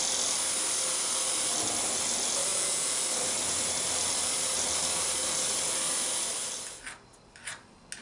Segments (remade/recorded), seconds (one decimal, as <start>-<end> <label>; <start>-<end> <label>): 0.0-2.5 recorded; 2.5-3.0 remade; 3.0-8.0 recorded